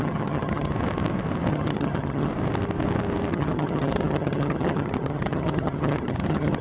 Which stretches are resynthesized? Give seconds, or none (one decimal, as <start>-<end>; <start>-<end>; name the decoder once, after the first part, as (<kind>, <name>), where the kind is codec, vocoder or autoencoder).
0.0-0.7 (vocoder, HiFi-GAN); 1.5-2.3; 3.3-6.6

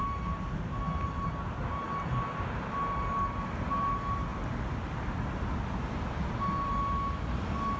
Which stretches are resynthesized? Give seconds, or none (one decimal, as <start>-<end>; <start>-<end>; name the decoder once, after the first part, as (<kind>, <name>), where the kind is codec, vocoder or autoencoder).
none

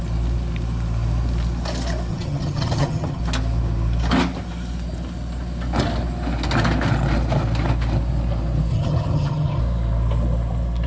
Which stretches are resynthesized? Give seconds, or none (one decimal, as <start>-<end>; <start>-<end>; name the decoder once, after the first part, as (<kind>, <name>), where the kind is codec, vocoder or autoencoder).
2.1-3.2 (vocoder, HiFi-GAN); 8.7-9.6

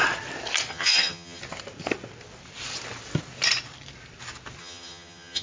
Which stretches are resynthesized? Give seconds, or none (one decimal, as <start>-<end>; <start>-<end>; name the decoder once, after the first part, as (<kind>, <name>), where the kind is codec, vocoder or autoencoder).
0.7-1.4 (vocoder, HiFi-GAN); 4.6-5.4

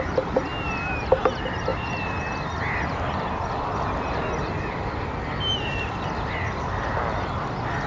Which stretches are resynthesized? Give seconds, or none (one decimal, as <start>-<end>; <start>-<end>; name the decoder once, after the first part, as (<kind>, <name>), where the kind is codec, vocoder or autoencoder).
none

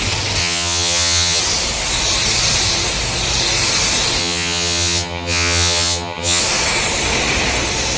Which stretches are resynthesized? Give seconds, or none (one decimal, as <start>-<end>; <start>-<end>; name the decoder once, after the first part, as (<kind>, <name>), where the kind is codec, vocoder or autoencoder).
0.4-1.4 (vocoder, HiFi-GAN); 4.2-6.4